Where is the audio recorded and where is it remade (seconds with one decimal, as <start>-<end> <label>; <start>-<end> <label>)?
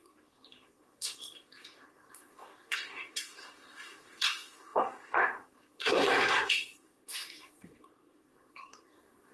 0.0-9.3 remade